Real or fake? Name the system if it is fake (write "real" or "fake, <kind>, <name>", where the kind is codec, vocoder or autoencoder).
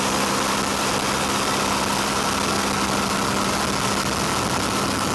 real